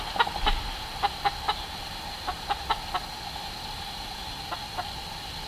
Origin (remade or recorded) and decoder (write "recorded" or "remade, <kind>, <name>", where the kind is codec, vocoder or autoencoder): recorded